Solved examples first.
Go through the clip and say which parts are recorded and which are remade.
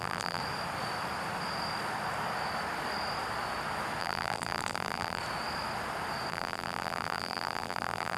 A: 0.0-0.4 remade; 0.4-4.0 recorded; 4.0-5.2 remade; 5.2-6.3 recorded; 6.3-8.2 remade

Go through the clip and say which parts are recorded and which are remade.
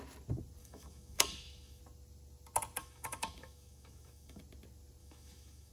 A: 0.0-0.6 recorded; 0.6-1.8 remade; 1.8-2.8 recorded; 2.8-4.4 remade; 4.4-5.0 recorded; 5.0-5.7 remade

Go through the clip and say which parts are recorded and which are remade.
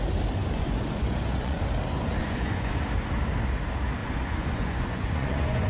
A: 0.0-0.4 recorded; 0.4-1.6 remade; 1.6-2.2 recorded; 2.2-2.8 remade; 2.8-4.0 recorded; 4.0-5.7 remade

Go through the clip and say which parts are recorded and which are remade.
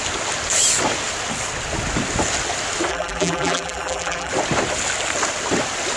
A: 0.0-2.9 recorded; 2.9-4.3 remade; 4.3-6.0 recorded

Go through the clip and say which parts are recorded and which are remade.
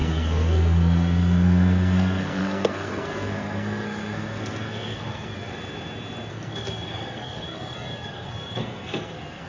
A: 0.0-5.5 remade; 5.5-6.3 recorded; 6.3-9.5 remade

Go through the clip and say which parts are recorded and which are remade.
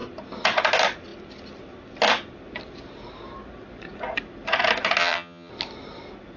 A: 0.0-5.0 recorded; 5.0-5.5 remade; 5.5-6.4 recorded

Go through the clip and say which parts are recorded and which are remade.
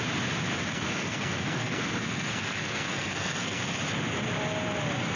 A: 0.0-0.7 recorded; 0.7-3.8 remade; 3.8-5.2 recorded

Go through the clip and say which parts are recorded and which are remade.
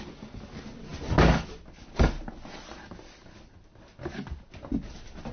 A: 0.0-5.3 recorded